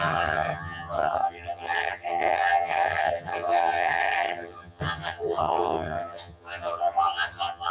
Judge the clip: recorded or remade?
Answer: remade